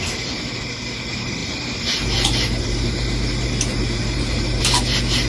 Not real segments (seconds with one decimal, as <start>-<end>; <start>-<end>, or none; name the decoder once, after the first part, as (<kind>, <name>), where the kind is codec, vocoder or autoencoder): 1.4-4.6 (vocoder, BigVGAN v2)